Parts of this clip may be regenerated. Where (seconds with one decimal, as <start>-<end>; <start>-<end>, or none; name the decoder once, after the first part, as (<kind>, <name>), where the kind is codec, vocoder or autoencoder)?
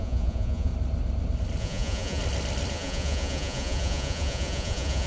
0.0-0.7 (vocoder, Vocos); 1.6-2.2; 2.7-5.1